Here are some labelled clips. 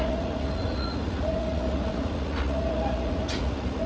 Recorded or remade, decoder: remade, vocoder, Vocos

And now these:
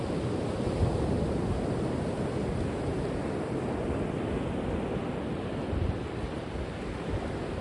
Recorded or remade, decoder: recorded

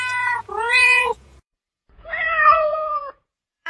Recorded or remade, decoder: remade, vocoder, Vocos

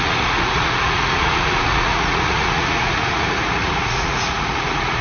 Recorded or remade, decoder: remade, vocoder, Vocos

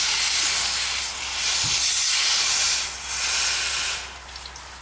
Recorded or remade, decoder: recorded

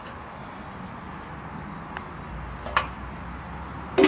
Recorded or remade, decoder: recorded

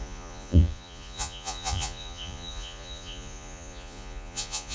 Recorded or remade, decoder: remade, vocoder, Vocos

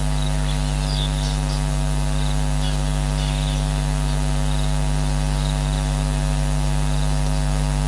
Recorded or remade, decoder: recorded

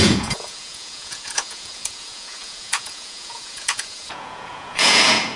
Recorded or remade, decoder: remade, vocoder, Vocos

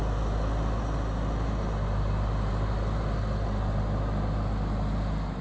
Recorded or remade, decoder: recorded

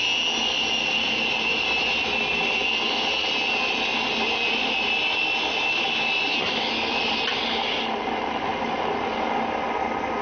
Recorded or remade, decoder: recorded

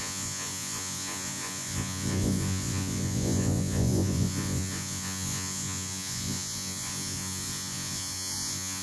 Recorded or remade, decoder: remade, vocoder, Vocos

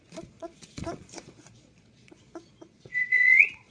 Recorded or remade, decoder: remade, vocoder, Vocos